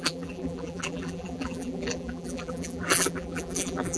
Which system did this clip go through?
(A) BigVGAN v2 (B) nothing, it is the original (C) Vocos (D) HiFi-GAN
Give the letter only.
A